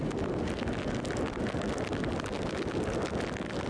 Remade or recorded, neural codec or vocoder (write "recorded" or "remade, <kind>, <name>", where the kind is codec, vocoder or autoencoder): recorded